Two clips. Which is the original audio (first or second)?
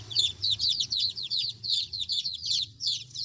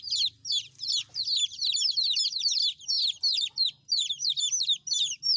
second